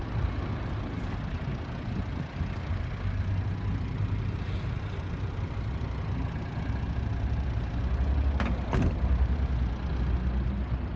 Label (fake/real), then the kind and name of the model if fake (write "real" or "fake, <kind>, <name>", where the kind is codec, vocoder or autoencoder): real